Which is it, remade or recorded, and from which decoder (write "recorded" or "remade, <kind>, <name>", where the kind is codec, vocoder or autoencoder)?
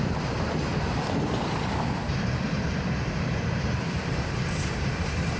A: recorded